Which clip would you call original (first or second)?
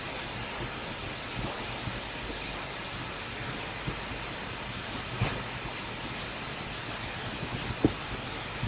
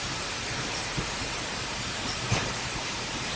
first